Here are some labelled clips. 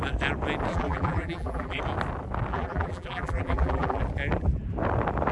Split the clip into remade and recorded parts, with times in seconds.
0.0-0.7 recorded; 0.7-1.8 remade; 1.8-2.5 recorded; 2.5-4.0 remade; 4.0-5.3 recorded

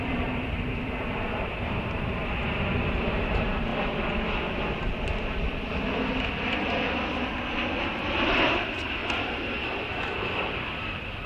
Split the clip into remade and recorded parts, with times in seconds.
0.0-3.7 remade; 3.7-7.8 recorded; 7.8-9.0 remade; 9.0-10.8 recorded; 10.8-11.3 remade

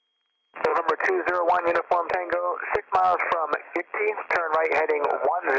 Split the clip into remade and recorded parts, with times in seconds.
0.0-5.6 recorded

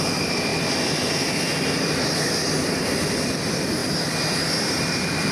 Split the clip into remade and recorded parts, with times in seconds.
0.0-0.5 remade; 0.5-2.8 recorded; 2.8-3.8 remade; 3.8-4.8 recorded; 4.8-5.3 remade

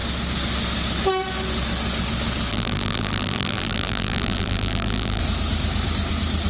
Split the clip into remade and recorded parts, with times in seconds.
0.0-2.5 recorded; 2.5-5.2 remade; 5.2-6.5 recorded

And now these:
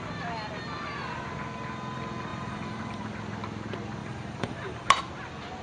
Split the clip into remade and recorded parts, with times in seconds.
0.0-2.3 recorded; 2.3-3.0 remade; 3.0-4.0 recorded; 4.0-5.0 remade; 5.0-5.6 recorded